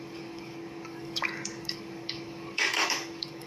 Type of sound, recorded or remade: remade